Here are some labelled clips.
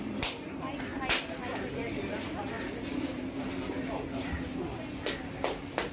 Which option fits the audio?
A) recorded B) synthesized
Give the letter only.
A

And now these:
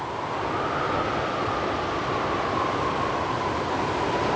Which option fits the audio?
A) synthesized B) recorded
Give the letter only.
B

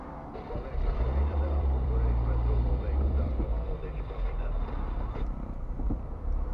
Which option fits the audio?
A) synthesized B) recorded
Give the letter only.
A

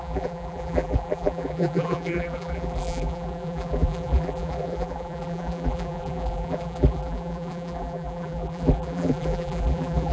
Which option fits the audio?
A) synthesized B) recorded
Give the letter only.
A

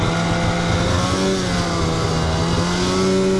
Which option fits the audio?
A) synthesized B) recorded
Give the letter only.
B